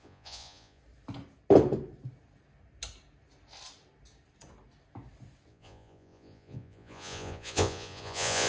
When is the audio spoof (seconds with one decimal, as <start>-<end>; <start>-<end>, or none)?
0.0-0.8; 5.5-8.5